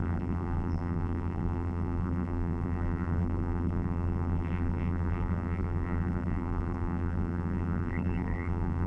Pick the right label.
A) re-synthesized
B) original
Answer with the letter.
A